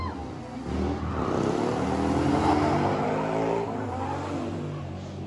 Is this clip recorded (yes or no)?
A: yes